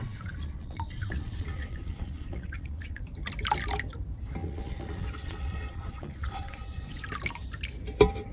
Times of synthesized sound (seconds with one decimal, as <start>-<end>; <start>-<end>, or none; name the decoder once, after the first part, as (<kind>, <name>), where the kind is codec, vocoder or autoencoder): 0.0-3.0 (vocoder, Vocos); 4.4-7.0